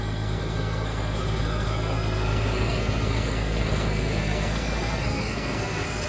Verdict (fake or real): fake